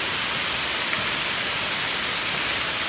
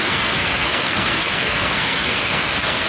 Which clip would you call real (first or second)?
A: first